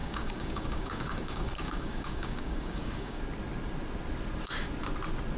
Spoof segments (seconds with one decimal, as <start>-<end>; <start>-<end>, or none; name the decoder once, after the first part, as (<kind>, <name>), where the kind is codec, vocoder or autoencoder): 0.0-3.2 (codec, DAC)